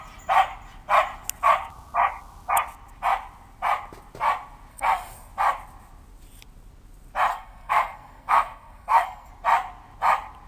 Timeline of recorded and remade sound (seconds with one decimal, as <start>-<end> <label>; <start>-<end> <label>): 0.0-4.7 recorded; 4.7-5.3 remade; 5.3-7.3 recorded; 7.3-9.3 remade; 9.3-10.5 recorded